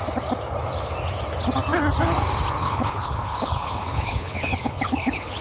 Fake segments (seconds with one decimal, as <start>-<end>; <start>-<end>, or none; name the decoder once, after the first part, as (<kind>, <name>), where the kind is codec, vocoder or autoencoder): 2.6-5.4 (codec, HILCodec)